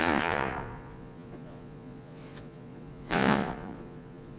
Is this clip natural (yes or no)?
no